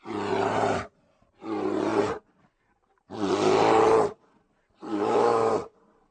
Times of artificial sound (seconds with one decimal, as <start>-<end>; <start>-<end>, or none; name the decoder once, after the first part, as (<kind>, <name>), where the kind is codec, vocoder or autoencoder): 4.9-5.5 (autoencoder, DAC-VAE)